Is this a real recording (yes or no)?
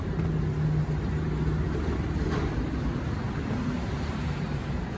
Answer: yes